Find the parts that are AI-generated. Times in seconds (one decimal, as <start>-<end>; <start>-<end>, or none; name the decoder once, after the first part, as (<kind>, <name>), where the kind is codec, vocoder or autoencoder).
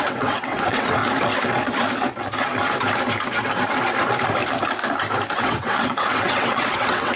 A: 0.0-1.0 (vocoder, WaveNeXt); 5.3-7.2